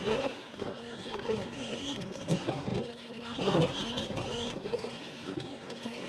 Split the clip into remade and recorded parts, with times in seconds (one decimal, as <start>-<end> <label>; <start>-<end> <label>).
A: 0.0-6.1 remade